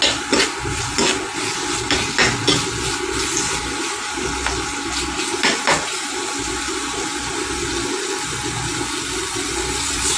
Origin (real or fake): real